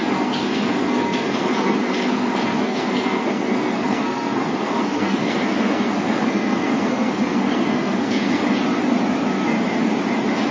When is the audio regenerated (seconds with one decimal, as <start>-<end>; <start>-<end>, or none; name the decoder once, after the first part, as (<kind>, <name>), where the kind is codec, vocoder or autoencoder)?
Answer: 0.0-8.4 (codec, SNAC)